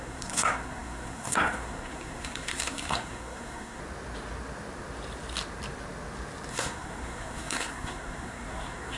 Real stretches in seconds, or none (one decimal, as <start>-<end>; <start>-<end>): 3.8-6.5